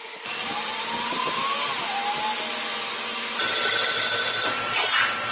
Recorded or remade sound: recorded